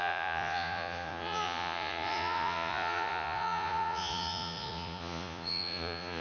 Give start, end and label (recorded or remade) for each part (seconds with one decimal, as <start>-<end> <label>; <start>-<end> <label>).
0.0-6.2 remade